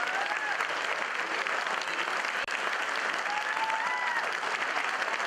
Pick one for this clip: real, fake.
real